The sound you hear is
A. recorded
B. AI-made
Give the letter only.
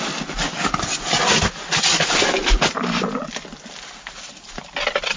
A